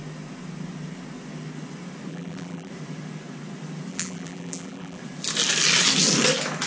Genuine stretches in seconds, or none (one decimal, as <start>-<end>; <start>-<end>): 0.0-2.1; 2.7-3.9; 5.0-6.7